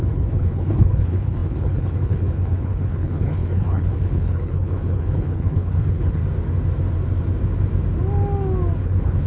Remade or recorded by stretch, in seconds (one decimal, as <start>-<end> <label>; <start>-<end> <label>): 0.0-6.2 remade; 6.2-8.8 recorded; 8.8-9.3 remade